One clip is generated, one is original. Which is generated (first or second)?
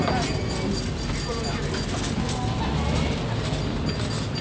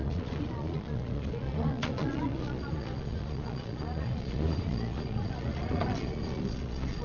second